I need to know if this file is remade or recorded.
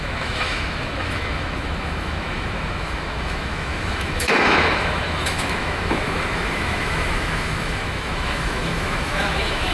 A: remade